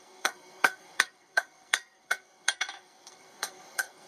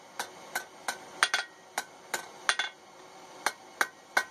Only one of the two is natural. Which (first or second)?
second